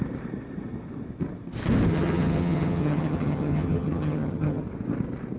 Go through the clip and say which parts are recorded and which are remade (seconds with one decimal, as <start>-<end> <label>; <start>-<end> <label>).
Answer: 0.0-1.9 recorded; 1.9-4.6 remade; 4.6-5.4 recorded